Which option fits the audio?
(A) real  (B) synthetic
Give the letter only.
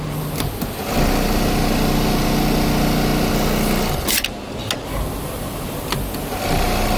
A